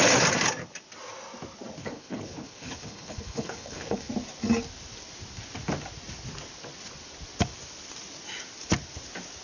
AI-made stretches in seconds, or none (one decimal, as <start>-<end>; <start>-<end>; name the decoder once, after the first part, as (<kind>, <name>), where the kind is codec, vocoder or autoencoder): 1.8-4.1 (codec, HILCodec)